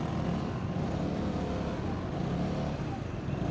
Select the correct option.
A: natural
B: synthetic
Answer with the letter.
A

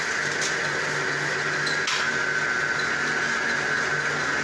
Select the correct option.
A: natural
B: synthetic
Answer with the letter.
A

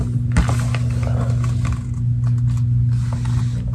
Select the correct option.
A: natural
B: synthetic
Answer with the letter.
A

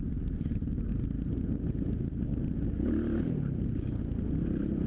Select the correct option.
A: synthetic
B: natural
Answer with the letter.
B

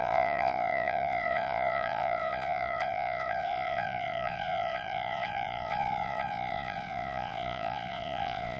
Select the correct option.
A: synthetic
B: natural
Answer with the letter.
A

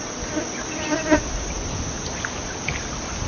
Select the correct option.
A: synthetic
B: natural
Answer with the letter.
B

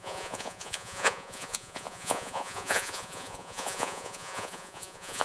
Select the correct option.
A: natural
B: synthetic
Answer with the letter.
B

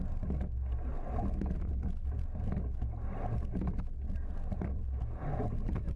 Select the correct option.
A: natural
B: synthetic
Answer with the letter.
A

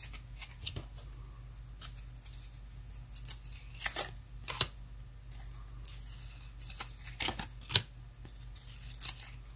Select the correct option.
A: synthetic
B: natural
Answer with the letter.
B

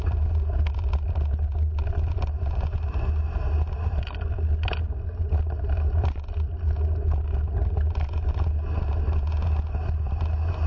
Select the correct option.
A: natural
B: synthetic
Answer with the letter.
A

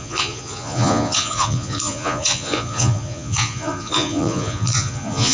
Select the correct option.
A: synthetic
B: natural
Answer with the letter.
A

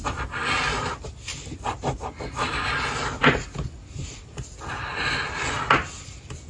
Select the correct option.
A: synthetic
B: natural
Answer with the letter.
B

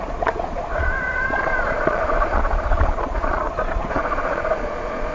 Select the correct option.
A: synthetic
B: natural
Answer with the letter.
A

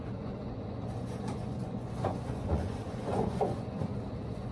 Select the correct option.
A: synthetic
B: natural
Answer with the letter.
A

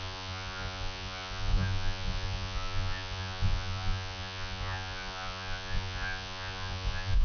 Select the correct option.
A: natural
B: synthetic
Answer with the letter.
B